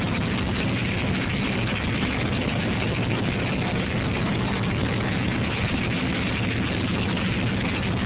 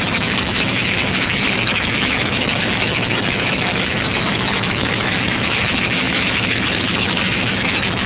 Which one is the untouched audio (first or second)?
first